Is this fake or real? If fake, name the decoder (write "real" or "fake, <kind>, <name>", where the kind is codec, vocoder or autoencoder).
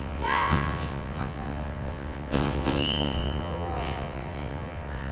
fake, vocoder, WaveNeXt